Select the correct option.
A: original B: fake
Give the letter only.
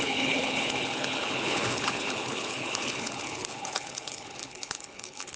B